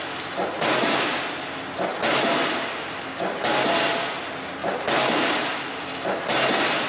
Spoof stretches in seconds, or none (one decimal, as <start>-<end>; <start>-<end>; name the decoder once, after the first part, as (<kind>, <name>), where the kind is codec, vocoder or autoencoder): none